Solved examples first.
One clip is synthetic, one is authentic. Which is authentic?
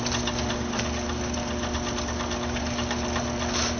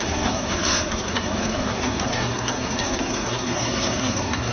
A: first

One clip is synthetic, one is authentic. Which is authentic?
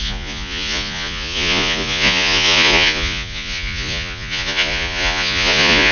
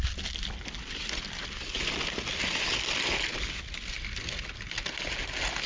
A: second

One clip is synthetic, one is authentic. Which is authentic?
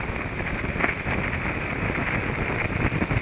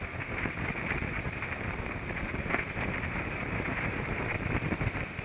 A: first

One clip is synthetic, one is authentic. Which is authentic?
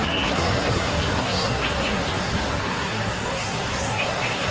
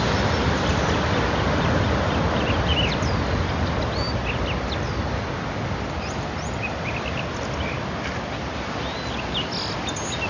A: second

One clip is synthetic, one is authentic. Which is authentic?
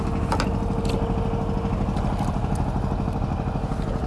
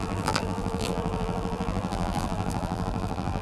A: first